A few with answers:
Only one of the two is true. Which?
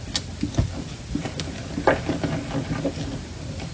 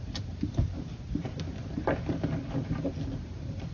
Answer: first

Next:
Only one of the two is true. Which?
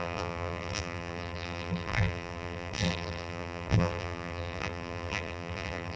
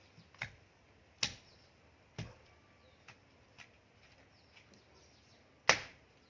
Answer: second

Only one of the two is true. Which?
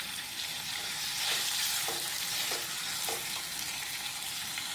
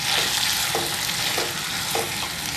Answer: second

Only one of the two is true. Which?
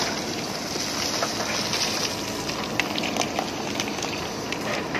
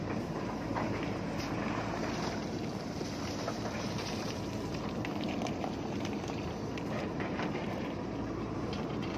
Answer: first